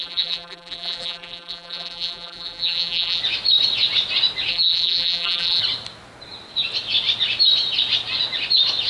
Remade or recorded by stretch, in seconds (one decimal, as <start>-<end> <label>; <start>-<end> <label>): 0.0-3.2 remade; 3.2-4.5 recorded; 4.5-5.6 remade; 5.6-8.9 recorded